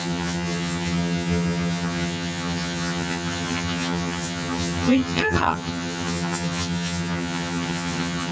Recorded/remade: remade